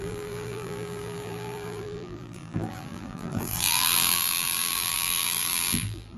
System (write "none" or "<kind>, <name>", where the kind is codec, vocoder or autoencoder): vocoder, BigVGAN v2